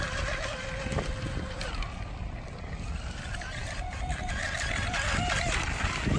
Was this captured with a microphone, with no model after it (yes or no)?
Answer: yes